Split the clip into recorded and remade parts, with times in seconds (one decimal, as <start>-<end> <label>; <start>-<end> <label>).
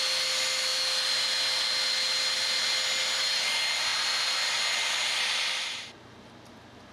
0.0-6.9 recorded